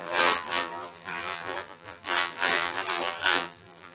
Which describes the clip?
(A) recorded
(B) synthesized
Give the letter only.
B